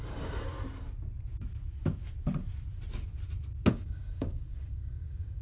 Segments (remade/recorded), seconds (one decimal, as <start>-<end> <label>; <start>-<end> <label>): 0.0-0.5 remade; 0.5-3.7 recorded; 3.7-5.4 remade